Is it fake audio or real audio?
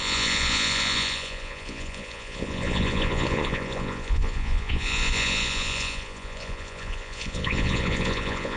fake